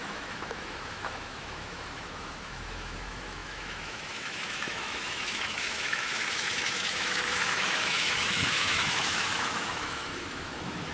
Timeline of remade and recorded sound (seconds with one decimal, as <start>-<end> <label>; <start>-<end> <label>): 0.0-10.9 remade